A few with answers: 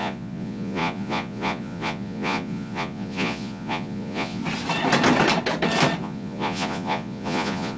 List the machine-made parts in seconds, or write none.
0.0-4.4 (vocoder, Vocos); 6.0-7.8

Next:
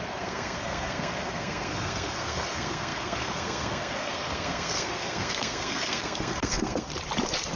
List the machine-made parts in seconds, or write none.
0.0-6.9 (codec, SNAC)

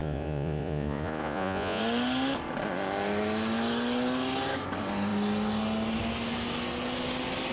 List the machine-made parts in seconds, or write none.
0.0-1.8 (vocoder, Vocos)